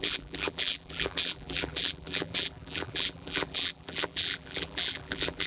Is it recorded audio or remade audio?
remade